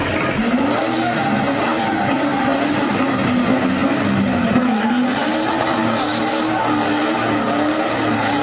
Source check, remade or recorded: recorded